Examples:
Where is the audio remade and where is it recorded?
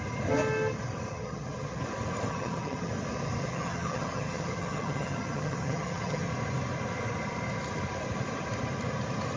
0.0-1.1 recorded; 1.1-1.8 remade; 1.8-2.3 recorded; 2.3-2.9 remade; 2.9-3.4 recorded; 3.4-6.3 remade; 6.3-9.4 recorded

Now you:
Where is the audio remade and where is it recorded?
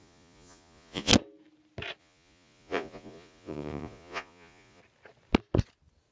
0.0-1.1 remade; 1.1-2.0 recorded; 2.0-4.8 remade; 4.8-6.1 recorded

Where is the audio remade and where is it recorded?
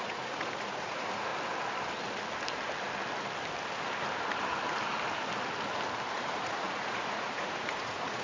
0.0-1.3 remade; 1.3-6.1 recorded; 6.1-8.2 remade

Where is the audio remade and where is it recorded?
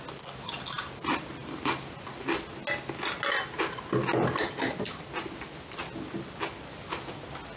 0.0-7.6 recorded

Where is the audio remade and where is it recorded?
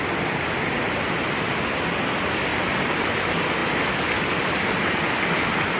0.0-2.5 recorded; 2.5-3.1 remade; 3.1-5.8 recorded